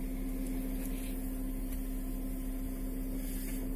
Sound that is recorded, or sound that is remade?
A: recorded